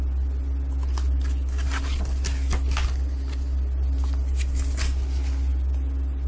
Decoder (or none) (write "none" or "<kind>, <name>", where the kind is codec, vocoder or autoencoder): none